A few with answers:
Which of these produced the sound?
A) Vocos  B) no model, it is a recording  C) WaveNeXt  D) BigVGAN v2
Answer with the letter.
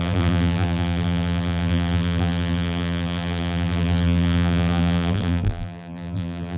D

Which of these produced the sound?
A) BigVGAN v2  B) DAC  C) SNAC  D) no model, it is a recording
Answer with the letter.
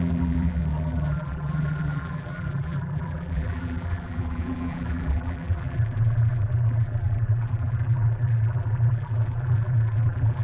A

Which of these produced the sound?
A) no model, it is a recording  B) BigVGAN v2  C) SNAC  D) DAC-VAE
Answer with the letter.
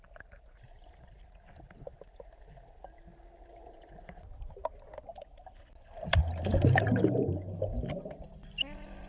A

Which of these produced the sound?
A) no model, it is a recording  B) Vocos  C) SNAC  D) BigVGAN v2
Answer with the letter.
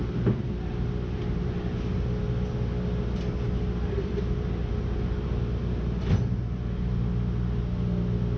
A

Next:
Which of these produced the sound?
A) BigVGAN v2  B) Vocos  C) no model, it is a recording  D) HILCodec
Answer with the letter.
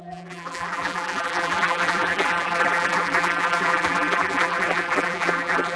A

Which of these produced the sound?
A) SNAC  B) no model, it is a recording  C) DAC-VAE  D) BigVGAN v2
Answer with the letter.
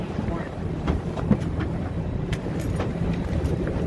D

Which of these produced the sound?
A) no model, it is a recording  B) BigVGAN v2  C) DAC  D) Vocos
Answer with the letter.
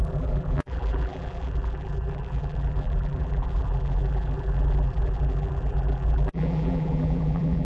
B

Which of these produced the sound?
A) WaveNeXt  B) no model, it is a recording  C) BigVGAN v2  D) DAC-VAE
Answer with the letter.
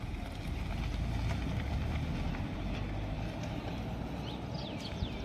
B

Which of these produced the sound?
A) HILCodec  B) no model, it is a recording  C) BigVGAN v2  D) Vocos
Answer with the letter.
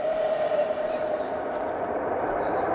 C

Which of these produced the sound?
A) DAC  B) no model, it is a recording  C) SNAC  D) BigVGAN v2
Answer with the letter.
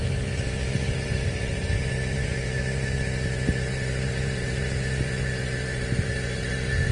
D